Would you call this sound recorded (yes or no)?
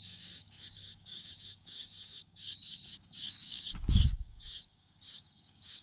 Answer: no